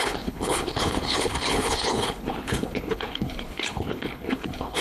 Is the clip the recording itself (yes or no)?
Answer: no